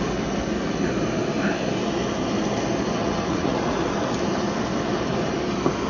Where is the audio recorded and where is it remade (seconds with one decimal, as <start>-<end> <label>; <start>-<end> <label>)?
0.0-3.0 recorded; 3.0-3.8 remade; 3.8-5.9 recorded